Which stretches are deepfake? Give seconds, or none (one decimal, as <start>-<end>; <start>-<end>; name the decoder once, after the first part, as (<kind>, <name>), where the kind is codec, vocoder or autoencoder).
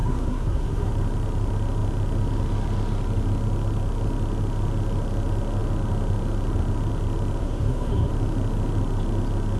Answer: 0.0-0.9 (codec, SNAC); 7.4-8.1